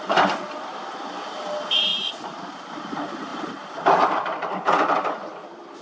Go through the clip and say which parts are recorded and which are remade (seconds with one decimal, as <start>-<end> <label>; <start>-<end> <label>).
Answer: 0.0-1.9 remade; 1.9-2.7 recorded; 2.7-5.2 remade; 5.2-5.8 recorded